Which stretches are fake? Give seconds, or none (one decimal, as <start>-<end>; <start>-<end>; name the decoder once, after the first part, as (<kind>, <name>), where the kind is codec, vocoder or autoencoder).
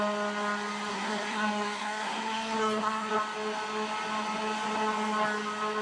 0.9-3.1 (codec, SNAC)